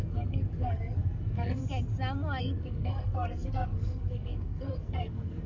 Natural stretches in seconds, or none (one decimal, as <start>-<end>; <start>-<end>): 1.6-2.4